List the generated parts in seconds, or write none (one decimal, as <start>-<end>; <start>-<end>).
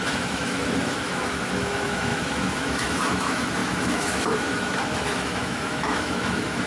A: 0.0-6.7